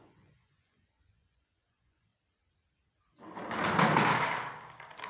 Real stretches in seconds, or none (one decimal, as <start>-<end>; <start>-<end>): 2.1-5.1